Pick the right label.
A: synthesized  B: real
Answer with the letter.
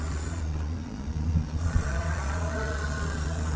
A